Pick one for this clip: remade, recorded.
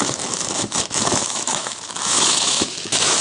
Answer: remade